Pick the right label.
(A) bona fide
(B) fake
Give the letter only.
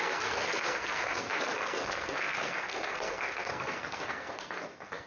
B